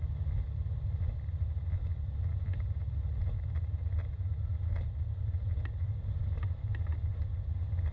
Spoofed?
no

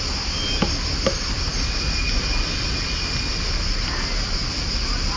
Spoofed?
no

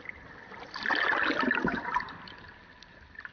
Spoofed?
no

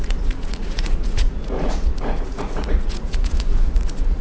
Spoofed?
yes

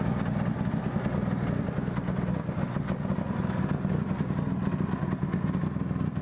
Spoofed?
no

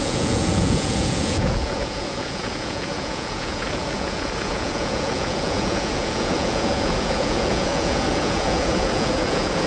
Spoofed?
yes